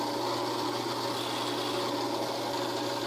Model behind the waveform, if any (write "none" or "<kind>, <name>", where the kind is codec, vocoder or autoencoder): none